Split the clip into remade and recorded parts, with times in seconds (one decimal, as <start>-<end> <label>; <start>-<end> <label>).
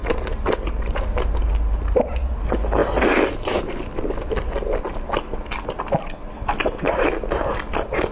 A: 0.0-8.1 recorded